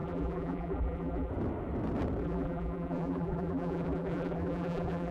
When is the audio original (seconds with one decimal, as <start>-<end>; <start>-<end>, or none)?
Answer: 1.3-2.2